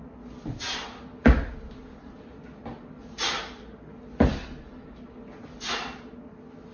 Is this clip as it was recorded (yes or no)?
yes